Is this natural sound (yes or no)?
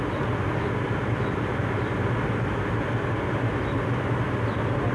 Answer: yes